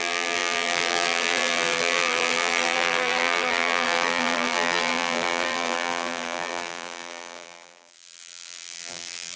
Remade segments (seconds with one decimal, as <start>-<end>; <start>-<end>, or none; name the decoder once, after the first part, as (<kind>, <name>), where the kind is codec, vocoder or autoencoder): 0.0-9.4 (vocoder, BigVGAN v2)